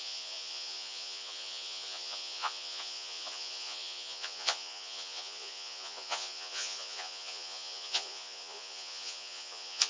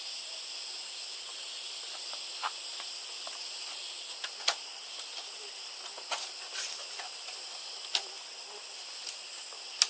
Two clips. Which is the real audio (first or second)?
second